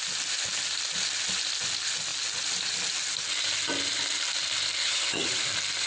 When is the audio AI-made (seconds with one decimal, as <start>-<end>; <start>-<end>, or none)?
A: 4.8-5.3